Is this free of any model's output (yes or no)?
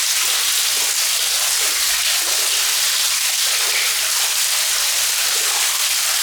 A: yes